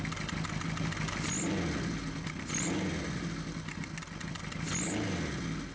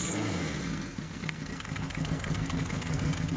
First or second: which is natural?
first